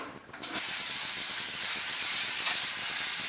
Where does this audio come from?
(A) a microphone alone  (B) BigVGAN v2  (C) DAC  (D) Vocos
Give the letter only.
B